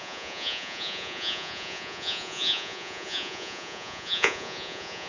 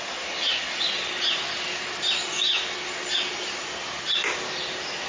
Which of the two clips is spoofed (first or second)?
first